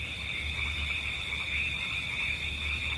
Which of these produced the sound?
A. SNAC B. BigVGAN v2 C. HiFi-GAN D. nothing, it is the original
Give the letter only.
D